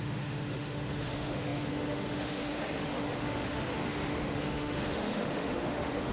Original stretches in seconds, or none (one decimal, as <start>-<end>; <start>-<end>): none